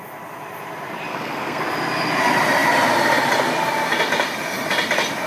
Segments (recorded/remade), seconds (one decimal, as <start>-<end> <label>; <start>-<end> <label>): 0.0-1.1 recorded; 1.1-1.6 remade; 1.6-5.3 recorded